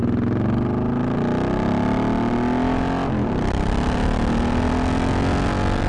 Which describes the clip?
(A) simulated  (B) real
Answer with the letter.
B